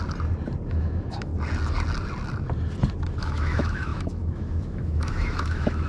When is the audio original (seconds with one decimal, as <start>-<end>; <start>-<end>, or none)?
0.0-0.7; 1.3-3.2